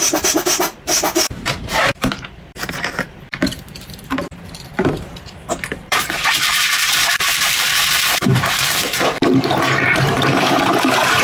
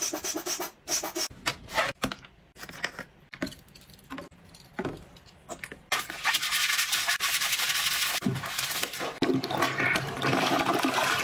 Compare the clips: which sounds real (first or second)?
second